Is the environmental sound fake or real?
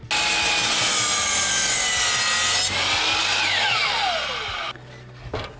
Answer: real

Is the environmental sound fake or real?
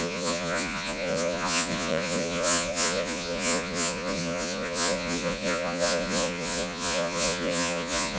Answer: fake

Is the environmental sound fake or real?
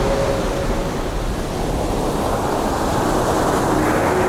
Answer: real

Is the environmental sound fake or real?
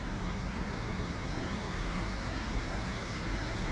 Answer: fake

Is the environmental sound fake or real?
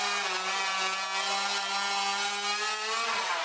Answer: real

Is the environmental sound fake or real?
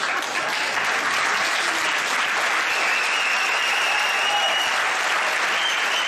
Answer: real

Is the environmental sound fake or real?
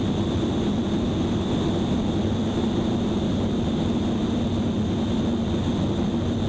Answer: real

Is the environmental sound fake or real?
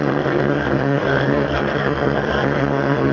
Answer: fake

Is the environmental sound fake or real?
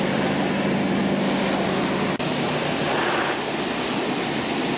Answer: real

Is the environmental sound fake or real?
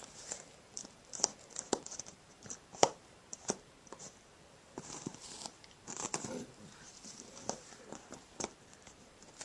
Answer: fake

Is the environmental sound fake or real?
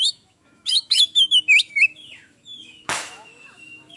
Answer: fake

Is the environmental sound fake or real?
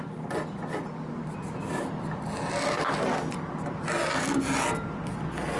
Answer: real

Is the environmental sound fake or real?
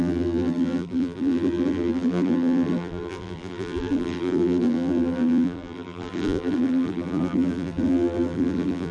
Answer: fake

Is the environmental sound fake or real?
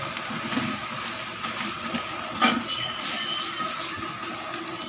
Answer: real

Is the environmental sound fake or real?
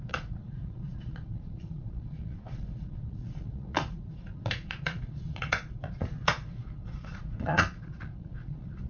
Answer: fake